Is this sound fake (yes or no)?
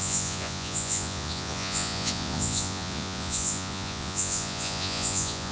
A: yes